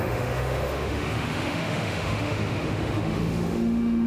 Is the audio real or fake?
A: fake